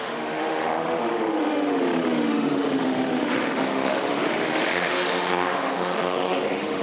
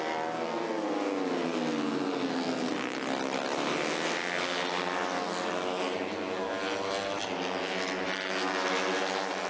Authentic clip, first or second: second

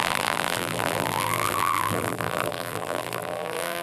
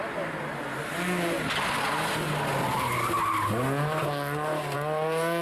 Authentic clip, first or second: second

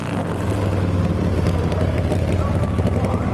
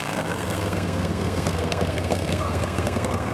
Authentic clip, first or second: first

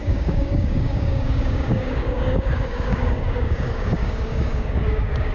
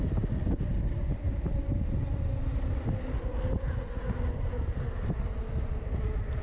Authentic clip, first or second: second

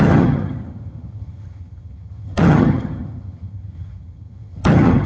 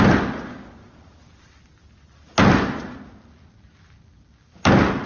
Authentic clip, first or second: second